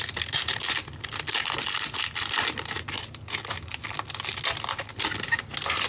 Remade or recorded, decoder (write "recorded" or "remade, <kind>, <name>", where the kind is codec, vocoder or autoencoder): recorded